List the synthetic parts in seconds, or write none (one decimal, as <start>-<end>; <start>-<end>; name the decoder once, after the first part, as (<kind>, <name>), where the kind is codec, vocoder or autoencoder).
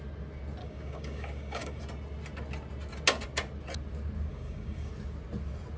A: 0.6-1.8 (codec, DAC); 4.3-4.9